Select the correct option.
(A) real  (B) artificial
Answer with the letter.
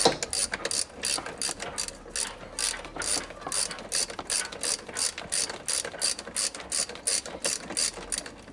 A